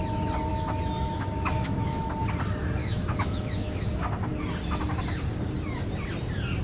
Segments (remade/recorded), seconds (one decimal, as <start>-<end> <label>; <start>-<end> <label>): 0.0-0.5 recorded; 0.5-2.1 remade; 2.1-2.8 recorded; 2.8-4.0 remade; 4.0-6.6 recorded